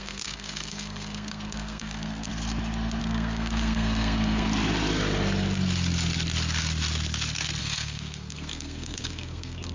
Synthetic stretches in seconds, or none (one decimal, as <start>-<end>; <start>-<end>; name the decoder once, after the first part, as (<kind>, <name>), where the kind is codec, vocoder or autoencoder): 0.0-2.3 (codec, SNAC); 3.0-4.5; 7.6-9.7